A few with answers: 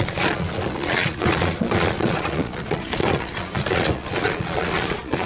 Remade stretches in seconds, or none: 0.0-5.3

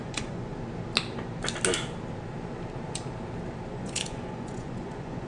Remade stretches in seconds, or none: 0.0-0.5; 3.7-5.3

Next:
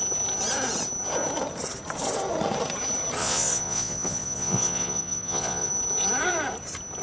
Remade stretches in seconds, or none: 3.2-5.7